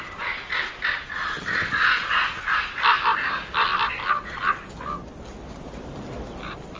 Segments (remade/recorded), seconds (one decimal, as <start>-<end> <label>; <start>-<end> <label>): 0.0-6.8 recorded